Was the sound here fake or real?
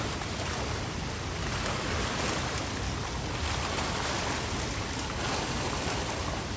real